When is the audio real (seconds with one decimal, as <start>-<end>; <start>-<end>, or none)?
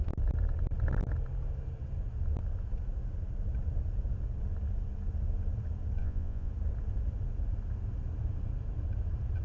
0.0-6.0; 6.5-9.4